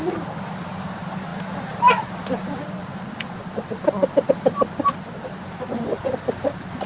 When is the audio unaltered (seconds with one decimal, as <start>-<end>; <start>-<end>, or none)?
0.0-2.8; 3.9-6.9